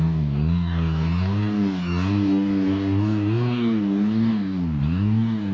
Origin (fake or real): fake